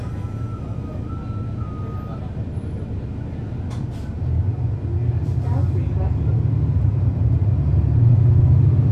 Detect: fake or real real